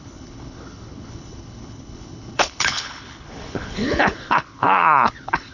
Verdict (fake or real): fake